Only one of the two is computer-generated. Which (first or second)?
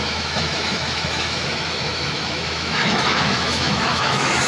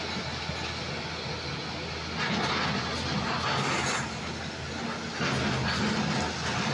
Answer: first